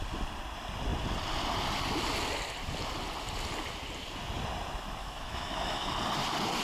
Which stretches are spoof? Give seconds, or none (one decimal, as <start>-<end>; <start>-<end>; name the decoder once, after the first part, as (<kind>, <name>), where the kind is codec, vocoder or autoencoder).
5.0-5.9 (autoencoder, DAC-VAE)